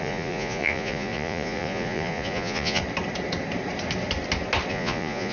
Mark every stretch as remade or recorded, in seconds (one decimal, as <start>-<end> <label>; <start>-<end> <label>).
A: 0.0-2.8 remade; 2.8-4.7 recorded; 4.7-5.3 remade